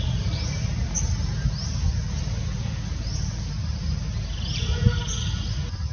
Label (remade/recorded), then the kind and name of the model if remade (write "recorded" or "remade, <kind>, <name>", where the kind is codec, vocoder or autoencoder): recorded